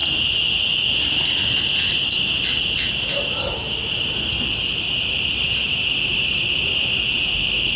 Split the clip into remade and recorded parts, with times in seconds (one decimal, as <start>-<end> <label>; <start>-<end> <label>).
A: 0.0-7.8 recorded